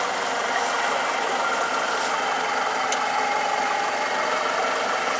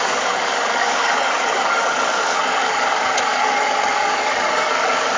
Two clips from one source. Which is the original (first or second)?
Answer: first